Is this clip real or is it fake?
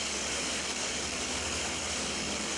fake